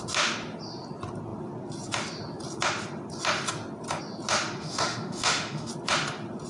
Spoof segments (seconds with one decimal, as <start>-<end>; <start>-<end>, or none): 4.6-5.7